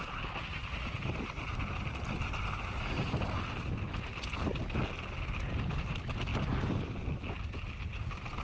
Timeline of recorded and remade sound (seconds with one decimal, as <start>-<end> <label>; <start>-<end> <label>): 0.0-8.4 recorded

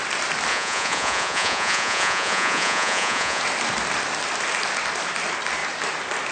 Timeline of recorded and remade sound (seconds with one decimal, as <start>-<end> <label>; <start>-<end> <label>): 0.0-0.5 recorded; 0.5-3.4 remade; 3.4-6.3 recorded

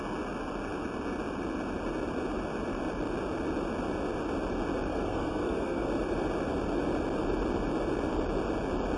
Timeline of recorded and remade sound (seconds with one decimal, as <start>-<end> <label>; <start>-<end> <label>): 0.0-4.9 recorded; 4.9-5.9 remade; 5.9-9.0 recorded

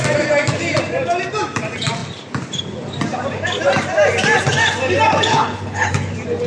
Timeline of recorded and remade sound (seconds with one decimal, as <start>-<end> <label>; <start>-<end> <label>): 0.0-5.3 recorded; 5.3-5.9 remade; 5.9-6.5 recorded

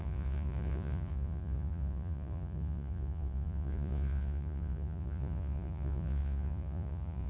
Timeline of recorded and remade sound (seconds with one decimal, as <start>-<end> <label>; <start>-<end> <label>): 0.0-7.3 remade

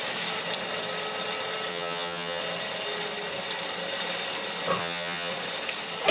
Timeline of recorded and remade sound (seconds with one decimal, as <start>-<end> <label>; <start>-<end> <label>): 0.0-1.7 recorded; 1.7-2.4 remade; 2.4-4.8 recorded; 4.8-5.3 remade; 5.3-6.1 recorded

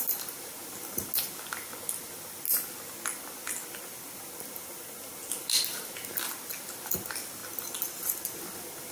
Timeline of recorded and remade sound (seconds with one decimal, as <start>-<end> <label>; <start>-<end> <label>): 0.0-8.9 recorded